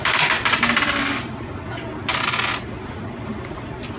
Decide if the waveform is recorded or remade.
recorded